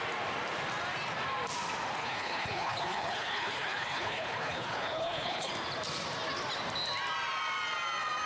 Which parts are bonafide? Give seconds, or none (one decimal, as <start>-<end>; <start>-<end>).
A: 0.0-2.0; 5.5-8.3